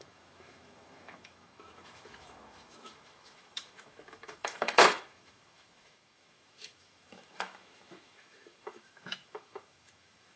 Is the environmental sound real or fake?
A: fake